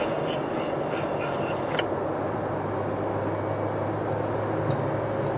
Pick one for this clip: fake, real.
real